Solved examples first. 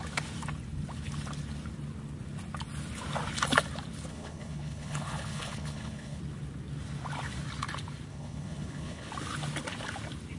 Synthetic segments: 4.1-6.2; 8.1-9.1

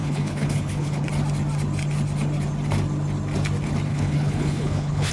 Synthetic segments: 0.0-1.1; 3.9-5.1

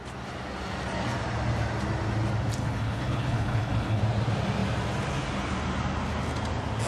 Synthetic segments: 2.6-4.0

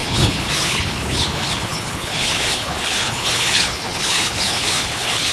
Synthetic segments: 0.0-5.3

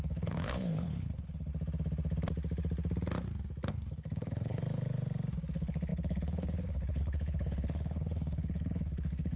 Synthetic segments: 0.0-1.5; 3.7-4.6; 5.5-9.4

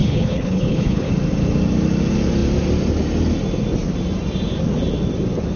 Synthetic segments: 0.0-1.1

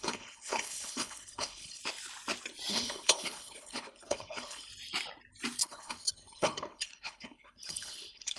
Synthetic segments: 0.0-1.8; 2.7-4.7; 5.6-8.4

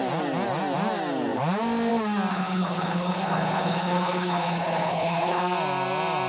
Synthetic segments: 2.3-5.4